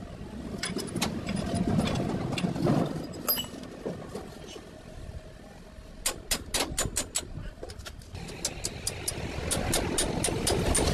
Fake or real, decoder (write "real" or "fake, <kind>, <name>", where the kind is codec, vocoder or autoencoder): real